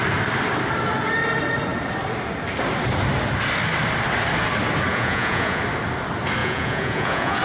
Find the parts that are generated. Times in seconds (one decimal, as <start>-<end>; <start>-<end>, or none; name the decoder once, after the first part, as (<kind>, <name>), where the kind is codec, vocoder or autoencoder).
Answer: 4.9-5.6 (vocoder, Vocos); 6.4-7.4